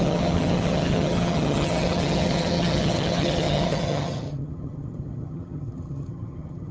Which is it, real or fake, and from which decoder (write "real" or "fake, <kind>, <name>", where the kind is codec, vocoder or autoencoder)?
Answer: fake, vocoder, HiFi-GAN